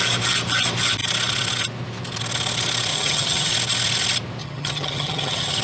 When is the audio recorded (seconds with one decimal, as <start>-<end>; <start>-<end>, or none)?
0.0-2.9; 3.5-4.4